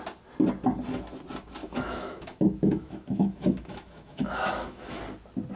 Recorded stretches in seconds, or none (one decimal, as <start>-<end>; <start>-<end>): 0.0-1.6; 5.0-5.6